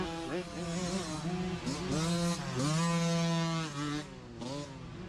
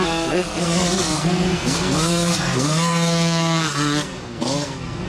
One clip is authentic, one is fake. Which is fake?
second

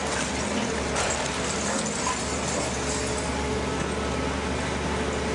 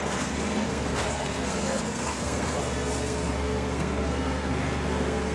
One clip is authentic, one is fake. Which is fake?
second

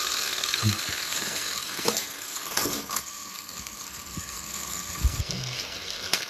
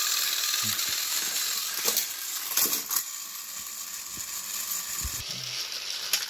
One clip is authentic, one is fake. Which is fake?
first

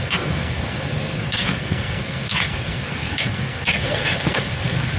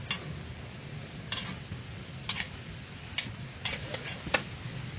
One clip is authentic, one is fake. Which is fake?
first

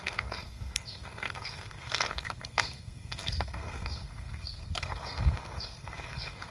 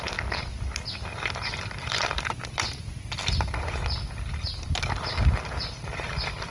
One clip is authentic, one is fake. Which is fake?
first